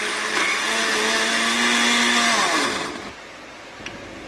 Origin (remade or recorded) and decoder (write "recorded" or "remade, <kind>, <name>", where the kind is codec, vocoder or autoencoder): recorded